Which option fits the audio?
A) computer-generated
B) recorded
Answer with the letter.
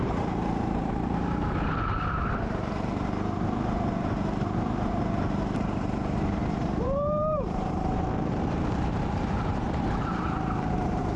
A